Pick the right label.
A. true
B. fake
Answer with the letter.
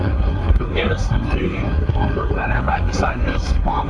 B